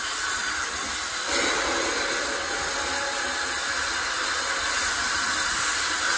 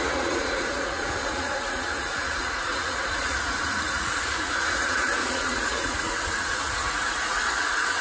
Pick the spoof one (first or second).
second